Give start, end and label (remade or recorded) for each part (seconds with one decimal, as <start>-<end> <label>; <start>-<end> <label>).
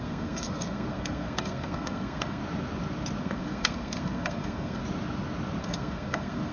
0.0-2.4 remade; 2.4-3.2 recorded; 3.2-4.8 remade; 4.8-5.6 recorded; 5.6-6.5 remade